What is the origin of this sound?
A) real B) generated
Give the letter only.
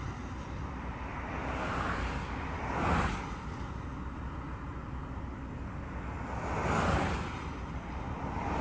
A